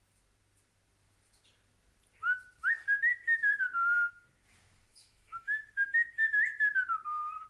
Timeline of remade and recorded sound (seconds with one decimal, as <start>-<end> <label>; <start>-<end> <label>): 0.0-4.9 recorded; 4.9-5.6 remade; 5.6-7.5 recorded